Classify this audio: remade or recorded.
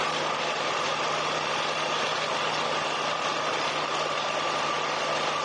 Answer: recorded